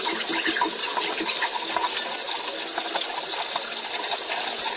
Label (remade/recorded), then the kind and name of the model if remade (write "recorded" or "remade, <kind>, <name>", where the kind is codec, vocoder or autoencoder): recorded